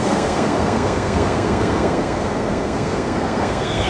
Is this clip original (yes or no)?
no